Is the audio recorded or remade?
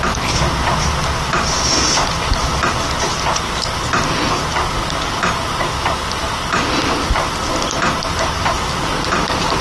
recorded